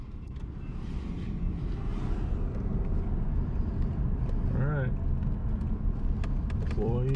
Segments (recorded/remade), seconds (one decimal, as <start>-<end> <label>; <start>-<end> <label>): 0.0-1.9 remade; 1.9-6.2 recorded; 6.2-7.2 remade